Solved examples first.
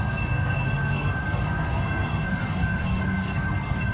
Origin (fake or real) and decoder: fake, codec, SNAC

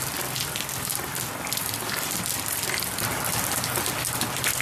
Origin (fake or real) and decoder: real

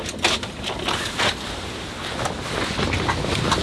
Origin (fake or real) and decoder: real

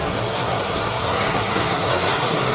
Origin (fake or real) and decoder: fake, codec, SNAC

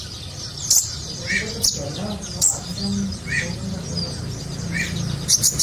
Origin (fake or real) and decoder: real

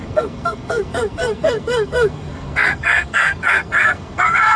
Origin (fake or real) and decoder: fake, codec, SNAC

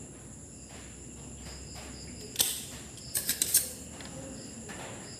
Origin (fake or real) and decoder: real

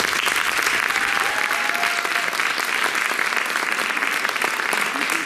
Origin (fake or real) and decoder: real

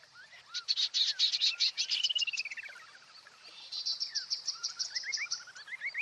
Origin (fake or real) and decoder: real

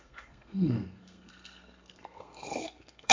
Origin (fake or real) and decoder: fake, codec, SNAC